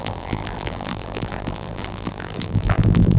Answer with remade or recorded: remade